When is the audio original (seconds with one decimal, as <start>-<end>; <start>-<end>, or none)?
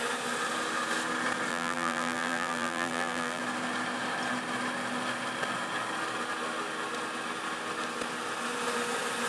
0.0-1.5; 3.4-9.3